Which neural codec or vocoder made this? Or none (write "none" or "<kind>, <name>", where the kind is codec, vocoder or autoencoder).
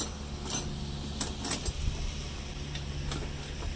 none